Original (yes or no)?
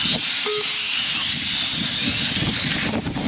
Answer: yes